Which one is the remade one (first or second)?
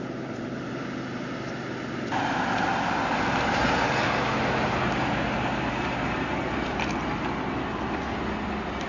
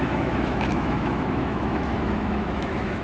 second